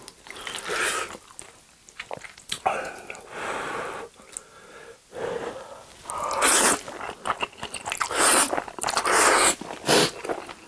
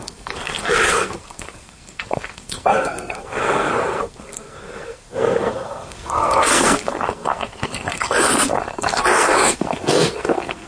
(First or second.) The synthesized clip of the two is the second